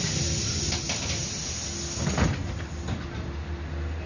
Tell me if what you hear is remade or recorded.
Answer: recorded